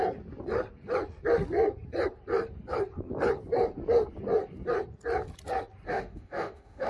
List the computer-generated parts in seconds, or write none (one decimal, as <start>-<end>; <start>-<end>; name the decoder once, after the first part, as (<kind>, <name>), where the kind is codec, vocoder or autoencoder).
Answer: 5.9-6.9 (autoencoder, DAC-VAE)